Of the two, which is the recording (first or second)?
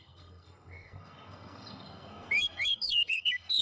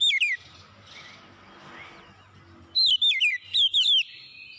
second